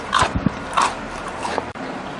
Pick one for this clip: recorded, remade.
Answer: remade